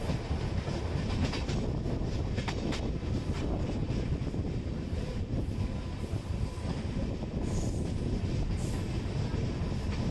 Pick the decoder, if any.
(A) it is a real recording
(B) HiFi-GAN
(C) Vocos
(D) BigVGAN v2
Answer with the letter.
D